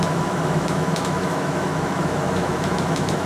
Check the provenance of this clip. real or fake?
fake